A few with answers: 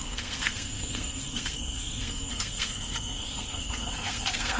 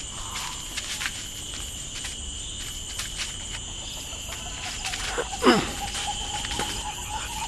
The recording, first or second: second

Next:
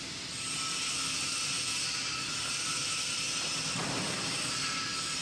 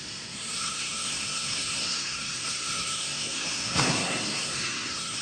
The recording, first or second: first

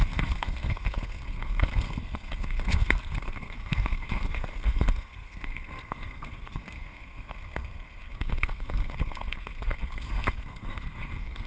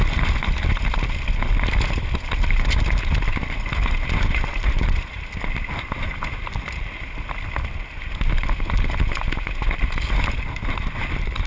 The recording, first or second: second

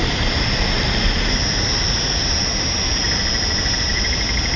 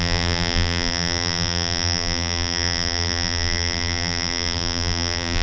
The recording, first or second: first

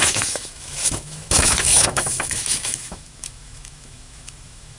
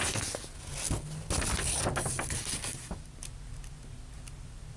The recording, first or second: second